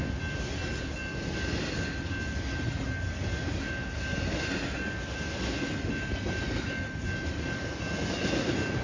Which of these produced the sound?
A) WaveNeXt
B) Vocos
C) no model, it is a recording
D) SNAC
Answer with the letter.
C